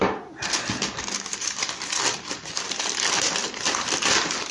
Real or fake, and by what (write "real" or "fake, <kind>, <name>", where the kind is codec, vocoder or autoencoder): real